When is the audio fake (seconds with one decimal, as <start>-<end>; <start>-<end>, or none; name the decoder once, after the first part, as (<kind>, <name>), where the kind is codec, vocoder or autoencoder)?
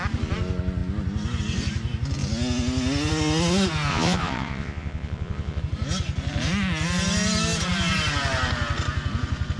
3.9-5.6 (vocoder, Vocos)